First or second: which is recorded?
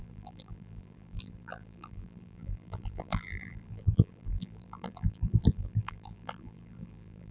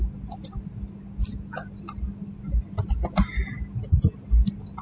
second